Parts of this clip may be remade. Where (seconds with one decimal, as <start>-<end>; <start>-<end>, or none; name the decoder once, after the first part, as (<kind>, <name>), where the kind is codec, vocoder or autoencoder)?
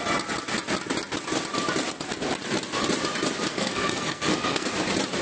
3.5-4.7 (codec, SNAC)